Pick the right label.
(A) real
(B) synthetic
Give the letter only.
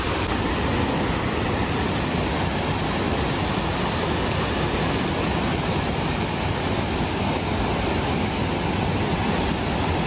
A